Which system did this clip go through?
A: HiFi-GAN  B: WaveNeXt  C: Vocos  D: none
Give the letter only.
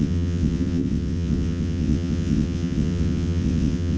B